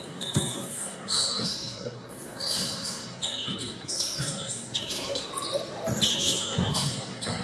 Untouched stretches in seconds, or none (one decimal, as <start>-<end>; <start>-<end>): 5.3-6.1